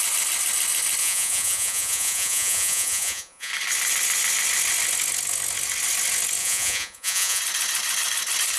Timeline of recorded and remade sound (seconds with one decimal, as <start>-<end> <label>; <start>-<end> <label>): 0.0-1.0 recorded; 1.0-3.5 remade; 3.5-6.4 recorded; 6.4-7.4 remade; 7.4-8.6 recorded